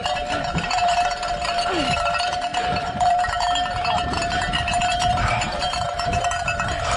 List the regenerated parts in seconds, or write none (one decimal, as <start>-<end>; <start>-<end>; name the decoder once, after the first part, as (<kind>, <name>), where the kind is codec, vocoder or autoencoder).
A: 0.0-7.0 (vocoder, BigVGAN v2)

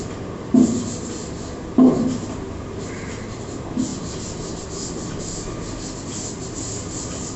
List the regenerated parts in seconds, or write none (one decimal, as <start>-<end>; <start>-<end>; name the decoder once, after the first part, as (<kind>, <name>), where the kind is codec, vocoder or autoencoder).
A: none

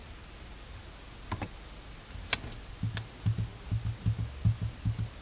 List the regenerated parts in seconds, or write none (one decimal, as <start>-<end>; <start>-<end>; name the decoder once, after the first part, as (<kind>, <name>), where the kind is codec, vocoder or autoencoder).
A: none

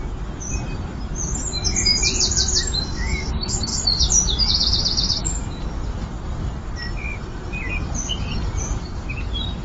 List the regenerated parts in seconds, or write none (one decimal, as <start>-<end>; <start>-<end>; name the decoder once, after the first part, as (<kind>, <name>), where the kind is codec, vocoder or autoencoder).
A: 1.6-2.7 (vocoder, BigVGAN v2); 3.7-6.7; 7.3-9.1

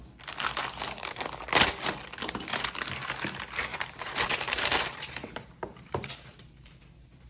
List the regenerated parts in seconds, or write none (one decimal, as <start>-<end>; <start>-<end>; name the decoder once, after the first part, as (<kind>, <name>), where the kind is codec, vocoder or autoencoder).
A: 3.7-6.8 (vocoder, BigVGAN v2)

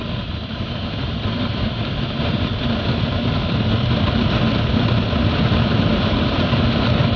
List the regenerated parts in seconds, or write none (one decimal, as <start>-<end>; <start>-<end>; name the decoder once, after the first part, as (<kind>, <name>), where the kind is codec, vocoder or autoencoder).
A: 0.0-2.5 (vocoder, BigVGAN v2); 6.1-7.2

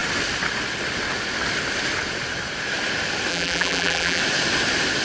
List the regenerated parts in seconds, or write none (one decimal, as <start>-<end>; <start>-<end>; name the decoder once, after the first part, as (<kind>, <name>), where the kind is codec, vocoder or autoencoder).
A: 3.3-4.2 (vocoder, BigVGAN v2)

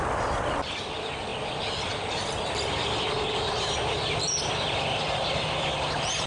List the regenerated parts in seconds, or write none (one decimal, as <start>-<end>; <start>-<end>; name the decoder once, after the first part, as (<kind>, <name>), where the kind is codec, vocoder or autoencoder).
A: 0.0-1.3 (vocoder, BigVGAN v2); 4.1-6.3